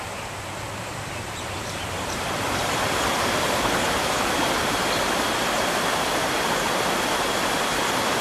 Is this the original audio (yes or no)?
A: yes